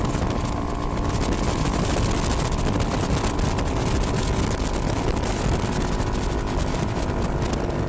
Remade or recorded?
recorded